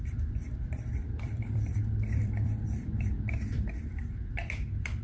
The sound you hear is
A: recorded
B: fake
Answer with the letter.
B